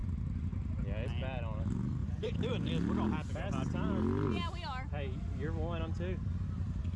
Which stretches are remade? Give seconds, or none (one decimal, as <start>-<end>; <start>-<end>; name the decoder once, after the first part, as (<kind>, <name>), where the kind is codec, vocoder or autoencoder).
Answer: 2.0-2.7 (vocoder, BigVGAN v2)